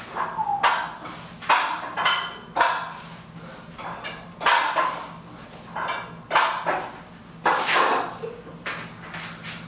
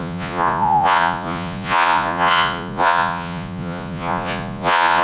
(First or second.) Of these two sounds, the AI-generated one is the second